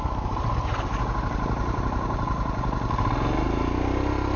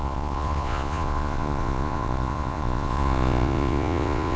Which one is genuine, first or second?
first